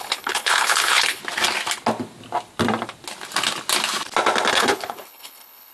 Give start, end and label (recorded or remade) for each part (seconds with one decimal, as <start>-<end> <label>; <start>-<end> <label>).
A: 0.0-1.2 remade; 1.2-4.5 recorded; 4.5-5.7 remade